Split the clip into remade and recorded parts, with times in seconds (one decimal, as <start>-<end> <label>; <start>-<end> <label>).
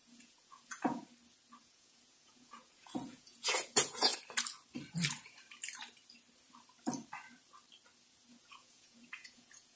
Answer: 0.0-1.0 remade; 1.0-1.6 recorded; 1.6-4.1 remade; 4.1-8.4 recorded; 8.4-9.8 remade